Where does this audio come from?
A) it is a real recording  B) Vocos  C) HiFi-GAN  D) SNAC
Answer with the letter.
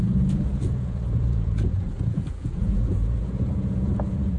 B